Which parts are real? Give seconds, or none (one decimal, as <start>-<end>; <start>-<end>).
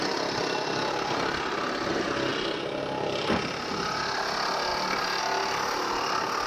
0.0-6.5